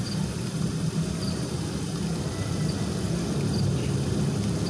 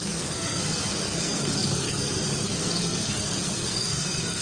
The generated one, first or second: second